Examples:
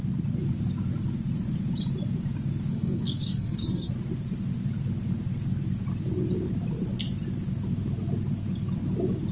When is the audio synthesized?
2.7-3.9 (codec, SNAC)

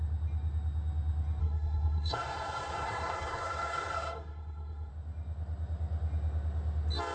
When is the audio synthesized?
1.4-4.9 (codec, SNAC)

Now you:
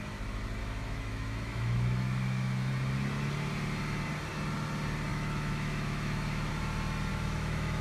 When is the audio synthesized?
0.6-2.7 (autoencoder, DAC-VAE); 5.1-6.5; 7.1-7.8

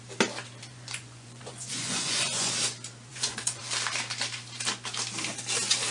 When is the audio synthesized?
0.7-2.5 (vocoder, Vocos); 3.1-3.6

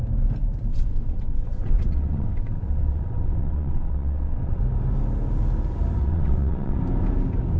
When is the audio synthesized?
0.7-4.6 (vocoder, WaveNeXt); 6.0-6.8

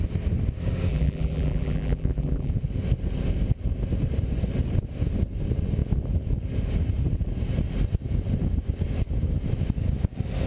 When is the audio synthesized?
0.9-2.5 (vocoder, BigVGAN v2)

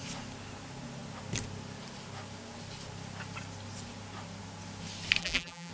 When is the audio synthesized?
5.2-5.7 (vocoder, BigVGAN v2)